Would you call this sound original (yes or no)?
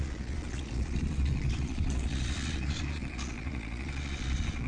no